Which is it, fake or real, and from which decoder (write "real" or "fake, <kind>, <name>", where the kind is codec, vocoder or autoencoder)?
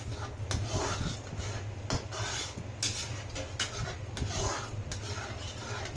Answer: real